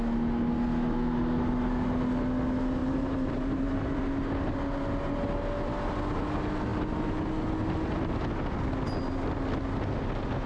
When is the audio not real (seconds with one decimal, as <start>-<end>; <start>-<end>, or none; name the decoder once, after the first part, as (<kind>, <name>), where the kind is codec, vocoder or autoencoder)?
2.8-4.0 (vocoder, BigVGAN v2)